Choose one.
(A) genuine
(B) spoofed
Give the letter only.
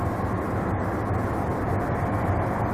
A